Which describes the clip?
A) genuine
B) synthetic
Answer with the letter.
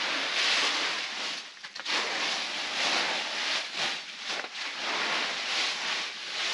A